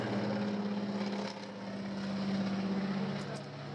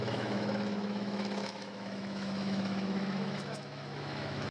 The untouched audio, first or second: first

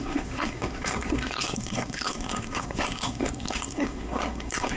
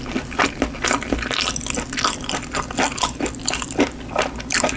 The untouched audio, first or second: second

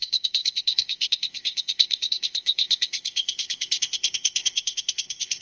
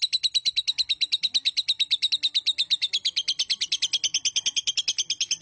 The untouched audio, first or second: second